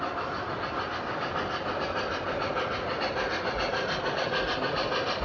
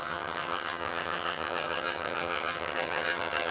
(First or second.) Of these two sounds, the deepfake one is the second